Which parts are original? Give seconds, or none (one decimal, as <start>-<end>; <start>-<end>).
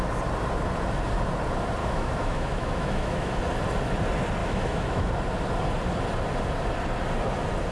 0.0-1.8; 3.4-4.4; 5.1-7.7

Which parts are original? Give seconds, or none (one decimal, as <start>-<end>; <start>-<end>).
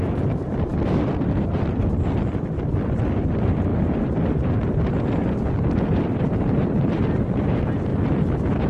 0.7-1.4; 7.9-8.7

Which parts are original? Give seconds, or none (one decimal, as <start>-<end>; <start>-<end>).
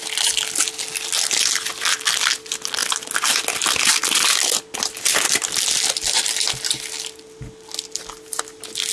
0.0-8.9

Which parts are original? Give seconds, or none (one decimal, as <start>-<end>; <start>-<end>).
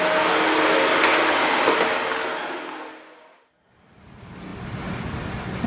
0.0-5.7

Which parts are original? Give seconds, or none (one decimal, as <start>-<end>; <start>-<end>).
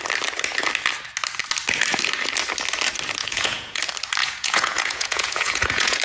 0.0-3.2; 3.8-4.2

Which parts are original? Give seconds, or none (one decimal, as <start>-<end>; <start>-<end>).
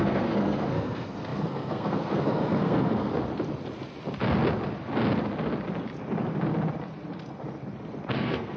3.1-8.1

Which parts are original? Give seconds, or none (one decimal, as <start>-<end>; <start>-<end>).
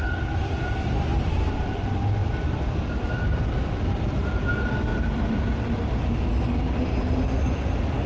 0.0-4.9; 6.2-8.1